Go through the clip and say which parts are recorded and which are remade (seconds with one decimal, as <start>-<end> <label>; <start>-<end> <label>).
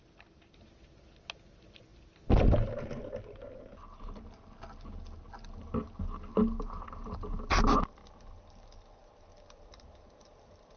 0.0-10.8 recorded